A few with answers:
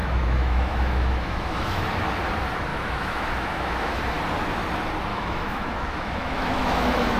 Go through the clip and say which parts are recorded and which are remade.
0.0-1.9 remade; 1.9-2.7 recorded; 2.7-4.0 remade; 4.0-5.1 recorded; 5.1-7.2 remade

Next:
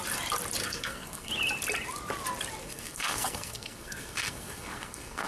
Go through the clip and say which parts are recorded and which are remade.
0.0-0.6 recorded; 0.6-1.3 remade; 1.3-2.6 recorded; 2.6-5.3 remade

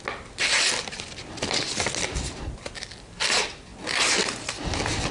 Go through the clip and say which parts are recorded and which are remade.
0.0-5.1 recorded

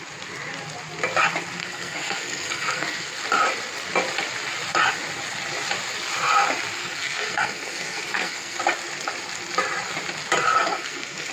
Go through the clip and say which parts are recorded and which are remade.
0.0-1.6 recorded; 1.6-3.2 remade; 3.2-6.8 recorded; 6.8-8.6 remade; 8.6-10.5 recorded; 10.5-11.3 remade

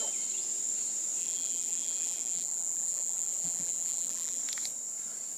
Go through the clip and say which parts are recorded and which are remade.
0.0-1.2 recorded; 1.2-4.4 remade; 4.4-5.4 recorded

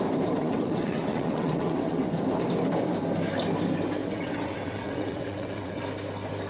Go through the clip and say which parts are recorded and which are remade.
0.0-0.4 recorded; 0.4-2.0 remade; 2.0-4.0 recorded; 4.0-5.8 remade; 5.8-6.5 recorded

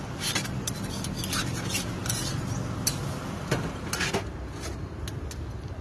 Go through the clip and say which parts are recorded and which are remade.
0.0-5.8 recorded

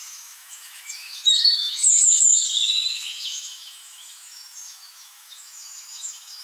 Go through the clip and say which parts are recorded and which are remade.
0.0-6.4 remade